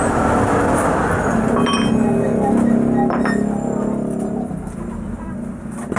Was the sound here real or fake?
real